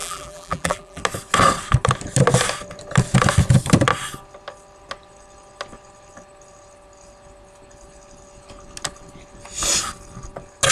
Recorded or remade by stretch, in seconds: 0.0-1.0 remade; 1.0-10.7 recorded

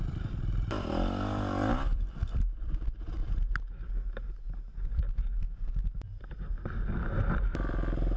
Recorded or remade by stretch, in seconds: 0.0-3.2 remade; 3.2-5.4 recorded; 5.4-8.2 remade

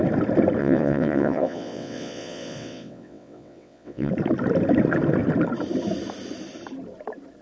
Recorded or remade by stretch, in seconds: 0.0-0.6 recorded; 0.6-4.1 remade; 4.1-7.4 recorded

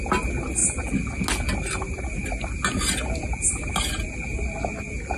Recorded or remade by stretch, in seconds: 0.0-5.2 recorded

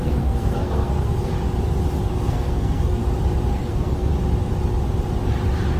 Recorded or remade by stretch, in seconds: 0.0-1.3 remade; 1.3-2.1 recorded; 2.1-3.0 remade; 3.0-3.5 recorded; 3.5-4.1 remade; 4.1-5.8 recorded

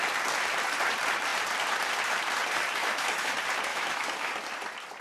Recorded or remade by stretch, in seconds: 0.0-2.8 recorded; 2.8-3.3 remade; 3.3-3.7 recorded; 3.7-4.3 remade; 4.3-5.0 recorded

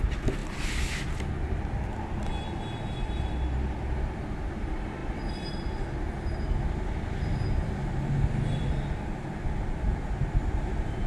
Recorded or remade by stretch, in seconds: 0.0-11.1 recorded